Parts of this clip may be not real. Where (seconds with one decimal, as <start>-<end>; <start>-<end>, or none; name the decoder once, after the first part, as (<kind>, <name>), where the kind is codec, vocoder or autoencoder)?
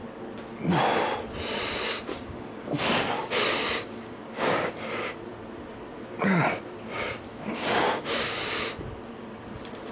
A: 2.1-4.7 (codec, DAC); 7.3-8.4